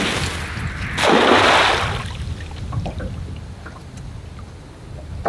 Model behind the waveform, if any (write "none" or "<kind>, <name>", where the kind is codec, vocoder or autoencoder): none